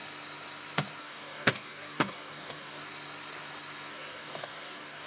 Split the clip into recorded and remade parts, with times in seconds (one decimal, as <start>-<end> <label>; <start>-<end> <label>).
0.0-1.0 recorded; 1.0-2.8 remade; 2.8-3.9 recorded; 3.9-5.1 remade